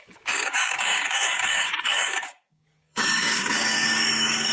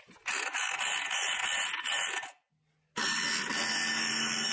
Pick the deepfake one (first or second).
first